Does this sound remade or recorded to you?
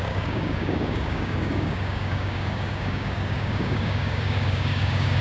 remade